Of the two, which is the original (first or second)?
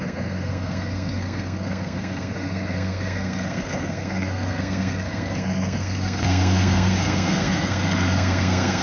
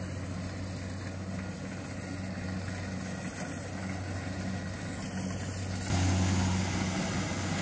second